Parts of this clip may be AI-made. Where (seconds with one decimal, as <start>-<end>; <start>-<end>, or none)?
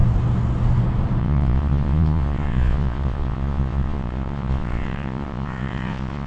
1.2-6.3